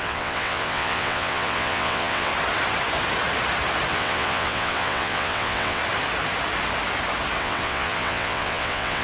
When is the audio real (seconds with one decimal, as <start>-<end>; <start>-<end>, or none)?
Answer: 2.3-3.9; 5.8-7.4